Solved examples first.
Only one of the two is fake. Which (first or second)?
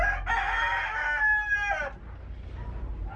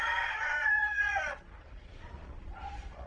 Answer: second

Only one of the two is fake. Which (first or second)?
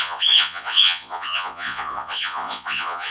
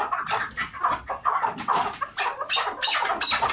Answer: first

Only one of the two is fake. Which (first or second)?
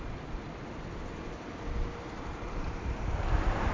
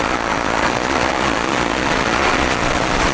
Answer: second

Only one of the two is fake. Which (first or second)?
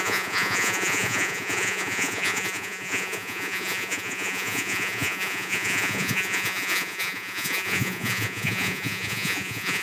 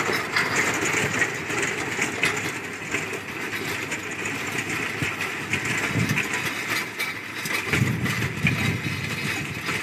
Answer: first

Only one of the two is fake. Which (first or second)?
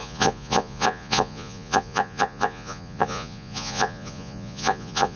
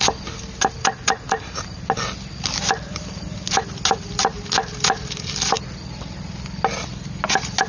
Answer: first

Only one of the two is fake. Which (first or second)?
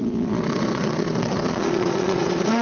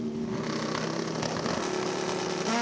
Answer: first